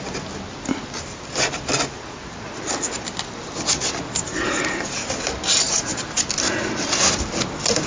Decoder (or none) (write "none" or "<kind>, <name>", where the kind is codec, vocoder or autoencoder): none